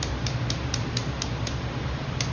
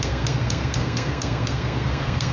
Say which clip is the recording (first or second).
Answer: first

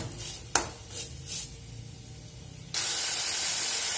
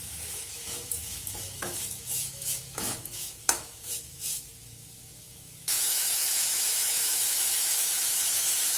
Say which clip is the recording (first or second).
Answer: first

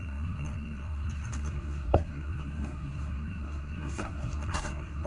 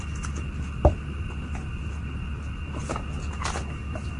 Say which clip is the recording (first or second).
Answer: second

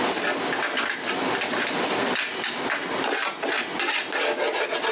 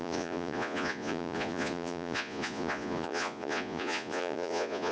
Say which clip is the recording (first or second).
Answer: first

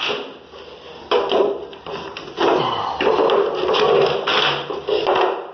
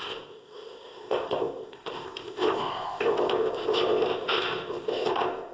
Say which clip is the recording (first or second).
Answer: first